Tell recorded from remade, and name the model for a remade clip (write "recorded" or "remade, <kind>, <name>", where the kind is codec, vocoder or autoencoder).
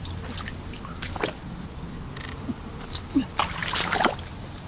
recorded